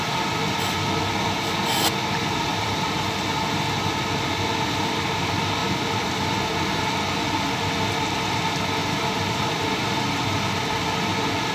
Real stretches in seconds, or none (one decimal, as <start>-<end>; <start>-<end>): 0.0-2.5; 3.7-5.6; 7.0-8.8; 9.8-11.5